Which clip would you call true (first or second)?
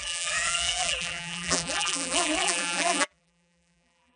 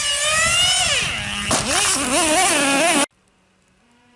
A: second